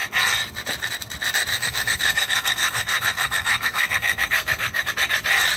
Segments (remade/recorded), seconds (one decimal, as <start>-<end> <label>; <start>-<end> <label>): 0.0-1.5 recorded; 1.5-4.9 remade; 4.9-5.6 recorded